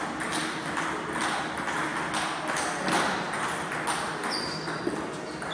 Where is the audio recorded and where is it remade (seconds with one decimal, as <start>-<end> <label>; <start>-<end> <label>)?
0.0-5.5 recorded